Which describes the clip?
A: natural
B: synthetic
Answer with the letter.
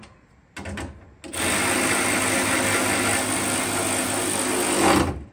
A